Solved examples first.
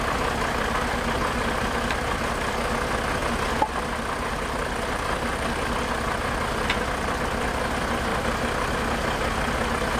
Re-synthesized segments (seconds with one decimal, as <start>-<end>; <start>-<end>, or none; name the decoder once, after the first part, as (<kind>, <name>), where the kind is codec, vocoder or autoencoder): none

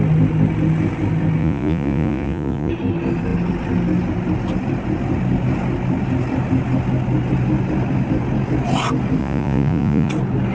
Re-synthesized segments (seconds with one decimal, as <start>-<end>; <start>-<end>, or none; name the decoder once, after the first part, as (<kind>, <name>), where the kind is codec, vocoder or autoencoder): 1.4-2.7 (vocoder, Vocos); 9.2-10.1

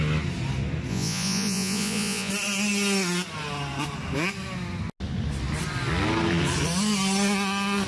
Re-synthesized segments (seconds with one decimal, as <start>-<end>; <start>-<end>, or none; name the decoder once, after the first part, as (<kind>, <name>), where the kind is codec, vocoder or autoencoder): 0.9-2.3 (vocoder, Vocos)

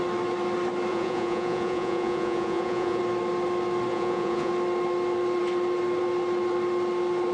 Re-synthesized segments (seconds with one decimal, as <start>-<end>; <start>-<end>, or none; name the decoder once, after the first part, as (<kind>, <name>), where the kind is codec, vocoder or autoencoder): 0.9-3.0 (vocoder, Vocos); 3.9-4.5

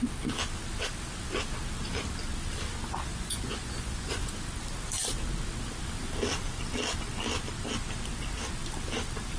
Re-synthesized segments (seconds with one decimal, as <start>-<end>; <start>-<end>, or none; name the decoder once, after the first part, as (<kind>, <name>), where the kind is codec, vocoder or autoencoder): 3.1-4.3 (vocoder, Vocos)